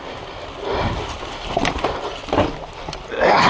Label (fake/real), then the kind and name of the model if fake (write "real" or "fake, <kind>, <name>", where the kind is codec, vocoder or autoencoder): real